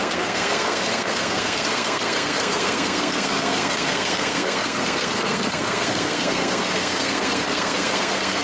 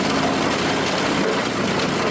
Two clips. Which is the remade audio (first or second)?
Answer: first